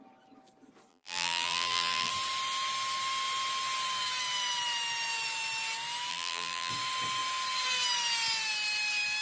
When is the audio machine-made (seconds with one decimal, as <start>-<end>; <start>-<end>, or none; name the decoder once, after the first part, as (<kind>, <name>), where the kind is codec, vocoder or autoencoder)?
0.9-2.1 (vocoder, BigVGAN v2); 6.1-6.7